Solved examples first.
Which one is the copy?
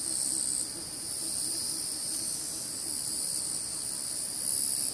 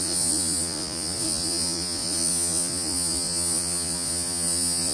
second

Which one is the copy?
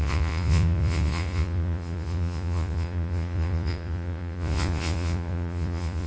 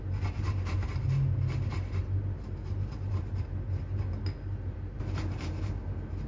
first